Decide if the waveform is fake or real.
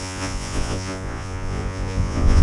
fake